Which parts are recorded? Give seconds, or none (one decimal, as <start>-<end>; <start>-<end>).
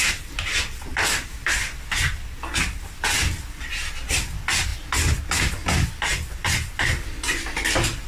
0.0-8.1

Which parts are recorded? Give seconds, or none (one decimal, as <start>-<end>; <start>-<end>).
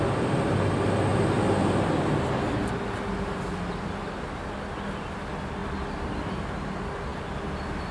0.0-7.9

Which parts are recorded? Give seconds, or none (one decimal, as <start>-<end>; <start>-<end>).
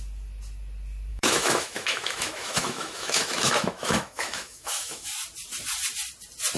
0.0-1.1; 5.1-6.6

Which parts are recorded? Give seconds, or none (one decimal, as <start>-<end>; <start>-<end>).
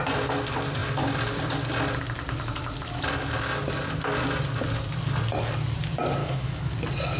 0.0-6.2; 6.7-7.2